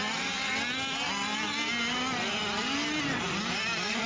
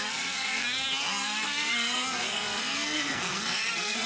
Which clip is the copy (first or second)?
second